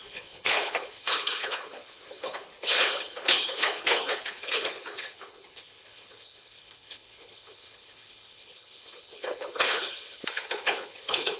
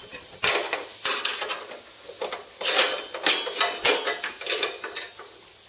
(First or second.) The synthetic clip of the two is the first